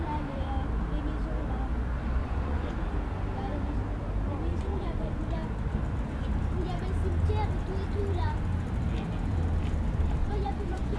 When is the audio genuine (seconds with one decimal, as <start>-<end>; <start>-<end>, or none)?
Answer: 0.0-2.2; 2.7-4.5; 5.2-10.2